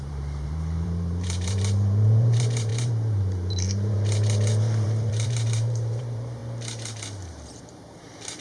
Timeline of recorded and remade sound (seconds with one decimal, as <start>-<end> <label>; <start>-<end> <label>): 0.0-6.4 remade; 6.4-7.5 recorded; 7.5-8.4 remade